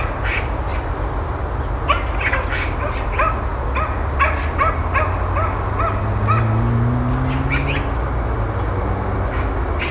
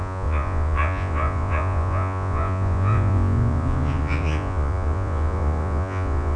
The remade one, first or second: second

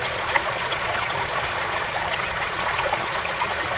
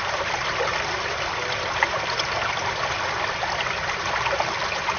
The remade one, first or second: first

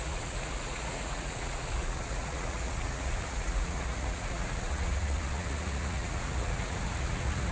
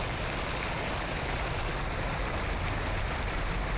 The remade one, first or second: first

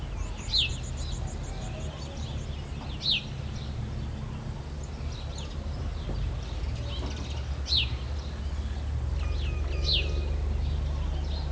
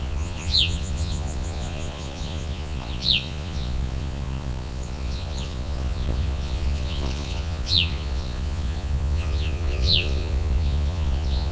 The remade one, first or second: second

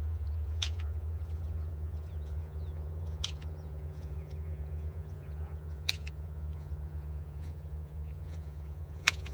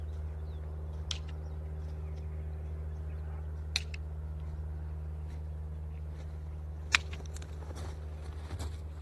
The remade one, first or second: first